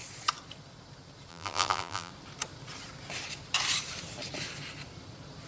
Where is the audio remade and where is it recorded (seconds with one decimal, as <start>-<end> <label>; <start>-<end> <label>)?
0.0-1.3 recorded; 1.3-2.1 remade; 2.1-5.5 recorded